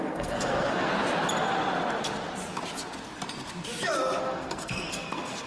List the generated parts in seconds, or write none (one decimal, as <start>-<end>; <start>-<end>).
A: 0.0-0.9; 4.2-5.5

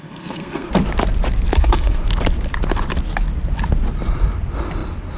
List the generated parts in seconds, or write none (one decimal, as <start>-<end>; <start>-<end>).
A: 0.0-0.7; 1.6-2.0

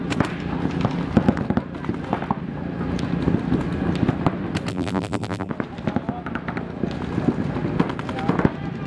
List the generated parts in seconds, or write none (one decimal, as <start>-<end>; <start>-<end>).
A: 4.7-5.5

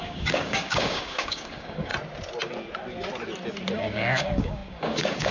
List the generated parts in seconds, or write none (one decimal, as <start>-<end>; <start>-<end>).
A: 0.0-1.9; 3.7-5.3

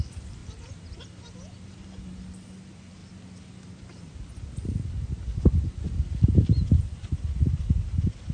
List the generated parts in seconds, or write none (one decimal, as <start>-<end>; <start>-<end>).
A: none